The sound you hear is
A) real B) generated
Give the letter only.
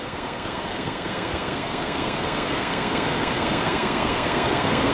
B